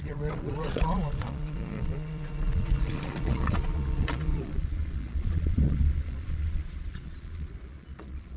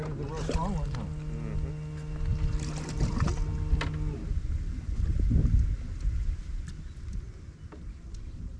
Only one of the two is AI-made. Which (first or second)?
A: first